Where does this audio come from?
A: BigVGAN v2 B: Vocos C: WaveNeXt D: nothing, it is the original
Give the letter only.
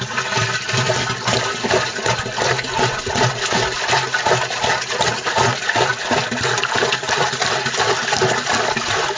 D